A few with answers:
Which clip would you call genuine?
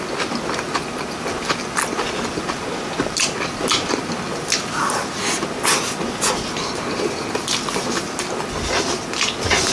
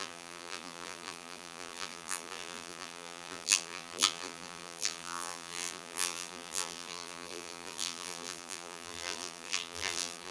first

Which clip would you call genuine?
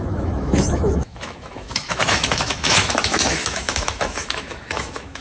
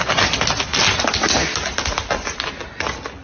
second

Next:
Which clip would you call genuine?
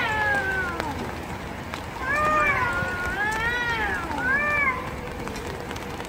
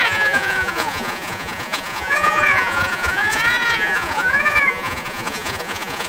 first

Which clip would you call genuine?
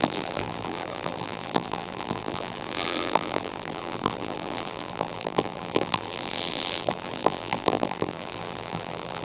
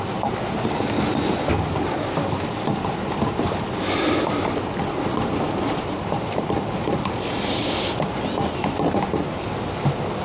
second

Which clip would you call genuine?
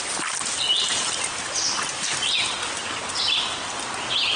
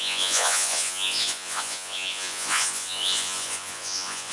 first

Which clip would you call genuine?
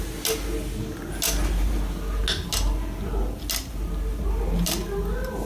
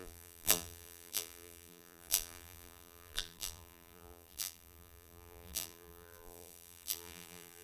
first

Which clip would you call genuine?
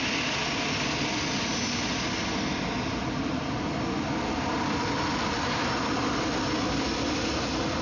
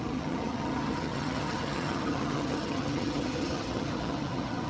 first